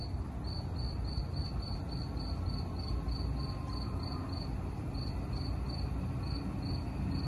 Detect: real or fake real